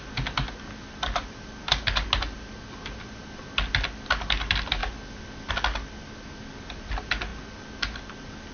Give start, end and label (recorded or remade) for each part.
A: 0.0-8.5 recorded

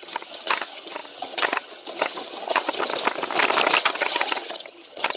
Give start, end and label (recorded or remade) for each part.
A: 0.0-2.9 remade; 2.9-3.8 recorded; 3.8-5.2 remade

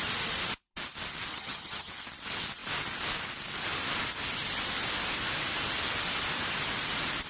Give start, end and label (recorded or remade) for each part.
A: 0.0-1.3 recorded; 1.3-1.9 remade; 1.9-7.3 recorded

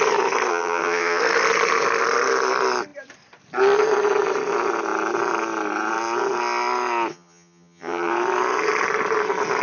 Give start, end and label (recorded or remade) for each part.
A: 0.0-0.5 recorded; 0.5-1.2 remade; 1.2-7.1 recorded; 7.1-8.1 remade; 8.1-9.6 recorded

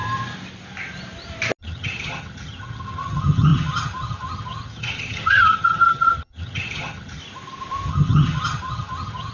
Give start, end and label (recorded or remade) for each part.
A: 0.0-1.6 recorded; 1.6-7.2 remade; 7.2-7.9 recorded; 7.9-9.3 remade